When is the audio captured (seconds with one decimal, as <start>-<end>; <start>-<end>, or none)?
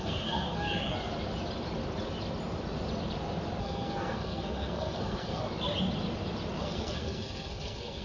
0.9-3.6; 5.4-6.6